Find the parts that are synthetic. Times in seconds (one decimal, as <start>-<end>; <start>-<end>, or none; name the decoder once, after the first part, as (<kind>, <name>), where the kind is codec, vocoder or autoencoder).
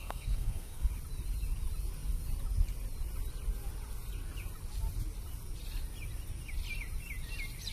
0.0-0.9 (codec, SNAC)